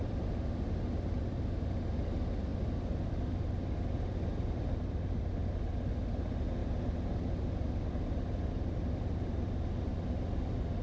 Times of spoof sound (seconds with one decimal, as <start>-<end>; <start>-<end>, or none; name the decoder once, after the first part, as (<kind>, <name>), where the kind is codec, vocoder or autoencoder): none